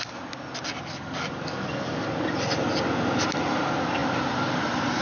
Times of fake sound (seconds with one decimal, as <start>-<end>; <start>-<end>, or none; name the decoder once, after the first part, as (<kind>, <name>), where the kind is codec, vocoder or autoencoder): none